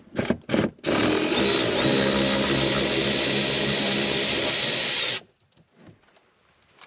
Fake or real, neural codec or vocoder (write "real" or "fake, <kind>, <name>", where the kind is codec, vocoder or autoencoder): real